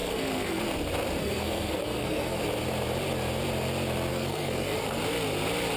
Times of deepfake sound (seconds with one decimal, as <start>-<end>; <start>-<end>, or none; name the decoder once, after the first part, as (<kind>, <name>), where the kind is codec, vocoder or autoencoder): 0.0-0.6 (codec, SNAC); 1.2-2.4; 4.1-5.0